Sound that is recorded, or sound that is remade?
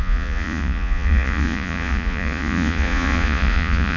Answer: remade